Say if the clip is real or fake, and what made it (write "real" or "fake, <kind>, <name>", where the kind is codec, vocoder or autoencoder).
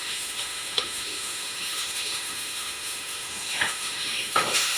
fake, autoencoder, DAC-VAE